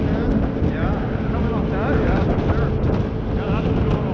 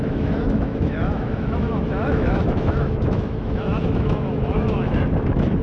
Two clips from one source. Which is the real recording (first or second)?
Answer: first